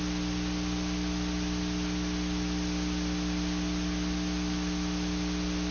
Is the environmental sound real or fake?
real